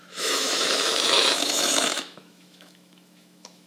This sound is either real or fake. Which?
fake